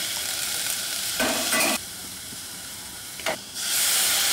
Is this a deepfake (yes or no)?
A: yes